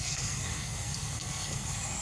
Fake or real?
fake